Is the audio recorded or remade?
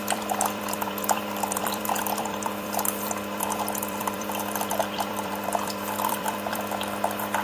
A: remade